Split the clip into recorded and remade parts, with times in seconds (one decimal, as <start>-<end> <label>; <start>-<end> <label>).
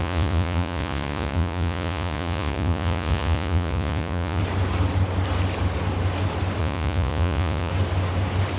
0.0-4.4 remade; 4.4-6.6 recorded; 6.6-7.7 remade; 7.7-8.6 recorded